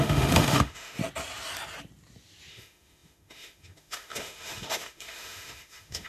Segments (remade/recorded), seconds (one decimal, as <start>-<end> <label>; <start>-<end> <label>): 0.0-1.0 remade; 1.0-2.5 recorded; 2.5-6.1 remade